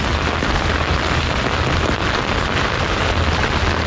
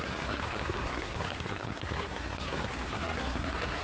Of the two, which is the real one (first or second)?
first